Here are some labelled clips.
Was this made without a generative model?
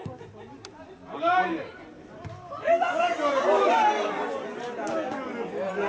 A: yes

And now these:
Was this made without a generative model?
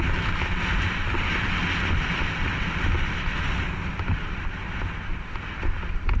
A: yes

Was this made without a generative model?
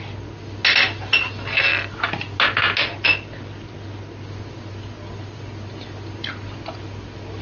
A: yes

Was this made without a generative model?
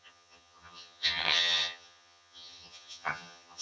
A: no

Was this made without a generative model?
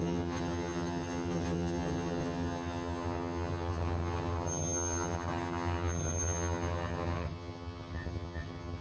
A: no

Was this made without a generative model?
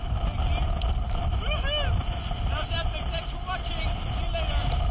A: yes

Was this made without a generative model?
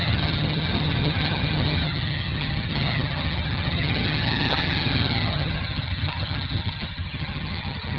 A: no